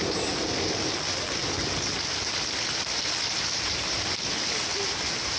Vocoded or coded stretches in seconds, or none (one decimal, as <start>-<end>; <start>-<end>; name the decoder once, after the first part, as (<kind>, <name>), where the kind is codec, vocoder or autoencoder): none